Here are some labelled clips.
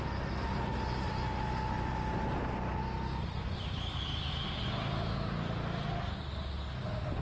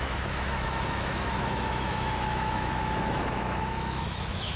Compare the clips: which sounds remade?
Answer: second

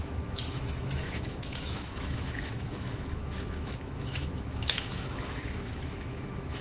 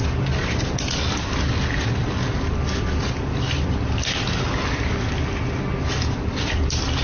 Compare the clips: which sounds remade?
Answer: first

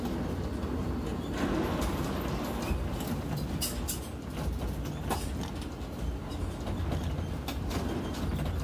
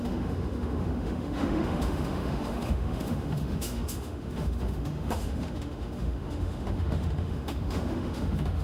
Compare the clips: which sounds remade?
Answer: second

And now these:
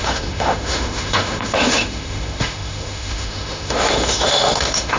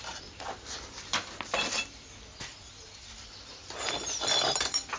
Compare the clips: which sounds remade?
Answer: first